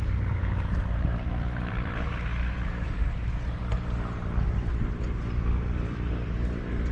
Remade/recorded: remade